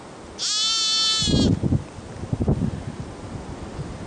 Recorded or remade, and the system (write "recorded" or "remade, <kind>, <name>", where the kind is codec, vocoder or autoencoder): recorded